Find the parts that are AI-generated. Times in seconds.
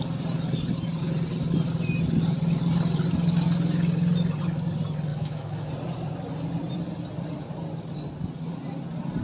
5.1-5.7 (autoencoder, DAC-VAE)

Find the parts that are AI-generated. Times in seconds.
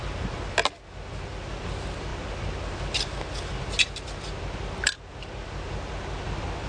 none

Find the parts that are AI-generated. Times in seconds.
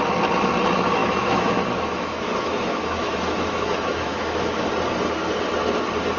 1.0-4.7 (autoencoder, DAC-VAE)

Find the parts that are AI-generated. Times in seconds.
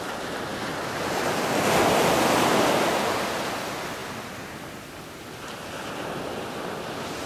none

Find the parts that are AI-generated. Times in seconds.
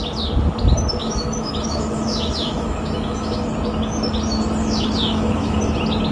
1.0-3.4 (autoencoder, DAC-VAE); 4.6-5.6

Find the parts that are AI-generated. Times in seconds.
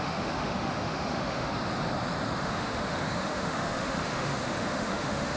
0.0-1.5 (autoencoder, DAC-VAE); 2.4-5.4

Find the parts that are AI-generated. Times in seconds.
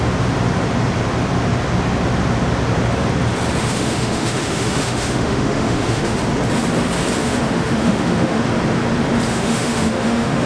3.6-6.2 (autoencoder, DAC-VAE); 7.2-8.4; 9.3-10.5